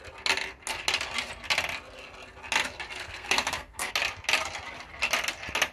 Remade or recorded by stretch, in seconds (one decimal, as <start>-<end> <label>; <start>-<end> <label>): 0.0-3.0 recorded; 3.0-3.9 remade; 3.9-5.7 recorded